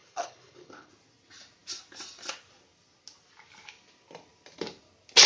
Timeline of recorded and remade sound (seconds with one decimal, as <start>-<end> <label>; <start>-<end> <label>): 0.0-0.9 remade; 0.9-5.3 recorded